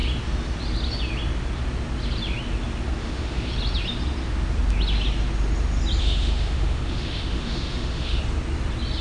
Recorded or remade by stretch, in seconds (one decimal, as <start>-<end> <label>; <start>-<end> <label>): 0.0-3.0 recorded; 3.0-3.5 remade; 3.5-6.0 recorded; 6.0-8.2 remade; 8.2-9.0 recorded